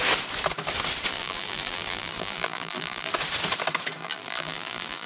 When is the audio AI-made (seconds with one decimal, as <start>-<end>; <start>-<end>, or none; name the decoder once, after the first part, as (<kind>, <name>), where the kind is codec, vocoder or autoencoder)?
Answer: 1.1-3.1 (vocoder, BigVGAN v2); 4.0-5.1